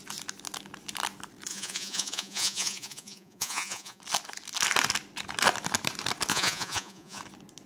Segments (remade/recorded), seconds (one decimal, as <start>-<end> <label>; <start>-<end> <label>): 0.0-1.5 recorded; 1.5-4.0 remade; 4.0-6.3 recorded; 6.3-7.2 remade; 7.2-7.7 recorded